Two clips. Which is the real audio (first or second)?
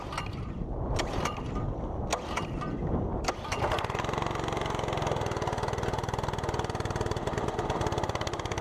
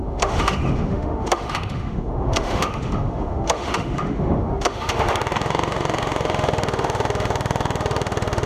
first